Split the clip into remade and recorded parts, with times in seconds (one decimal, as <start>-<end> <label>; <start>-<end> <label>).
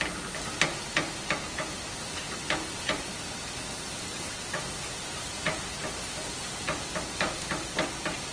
0.0-4.1 recorded; 4.1-4.6 remade; 4.6-8.3 recorded